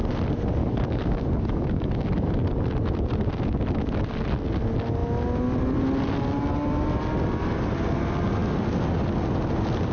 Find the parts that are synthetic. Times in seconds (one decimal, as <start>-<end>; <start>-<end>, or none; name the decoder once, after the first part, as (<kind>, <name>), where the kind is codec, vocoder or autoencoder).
0.6-2.3 (codec, DAC)